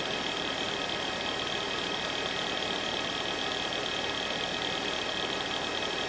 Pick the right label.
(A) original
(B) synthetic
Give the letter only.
A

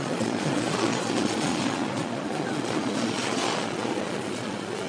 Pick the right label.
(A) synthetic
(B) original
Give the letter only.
A